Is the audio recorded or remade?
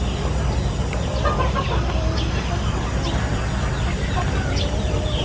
recorded